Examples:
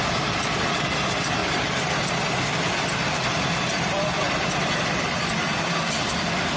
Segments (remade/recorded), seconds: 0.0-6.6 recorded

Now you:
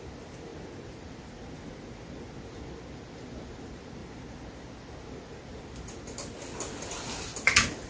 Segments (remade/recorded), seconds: 0.0-7.9 recorded

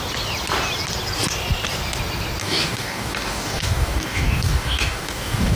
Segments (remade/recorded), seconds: 0.0-2.4 recorded; 2.4-5.6 remade

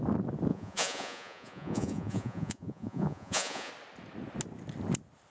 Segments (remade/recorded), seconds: 0.0-0.5 recorded; 0.5-3.7 remade; 3.7-5.3 recorded

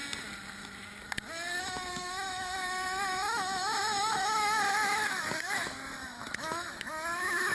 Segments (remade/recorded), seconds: 0.0-1.6 recorded; 1.6-7.5 remade

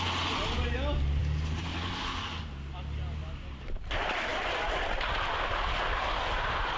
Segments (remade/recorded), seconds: 0.0-6.8 recorded

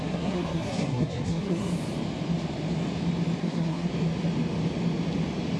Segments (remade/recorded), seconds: 0.0-1.7 remade; 1.7-3.4 recorded; 3.4-3.9 remade; 3.9-5.6 recorded